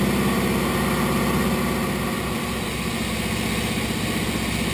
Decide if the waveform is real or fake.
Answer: real